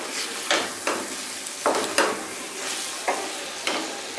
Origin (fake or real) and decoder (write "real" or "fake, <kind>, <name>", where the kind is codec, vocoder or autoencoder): real